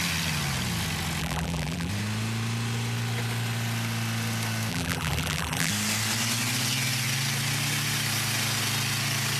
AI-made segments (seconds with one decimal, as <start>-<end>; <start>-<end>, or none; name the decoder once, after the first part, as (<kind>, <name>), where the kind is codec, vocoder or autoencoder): 1.2-1.9 (vocoder, BigVGAN v2); 4.7-5.7